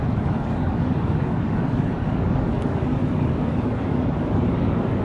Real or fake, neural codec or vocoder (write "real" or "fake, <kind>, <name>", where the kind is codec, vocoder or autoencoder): fake, codec, DAC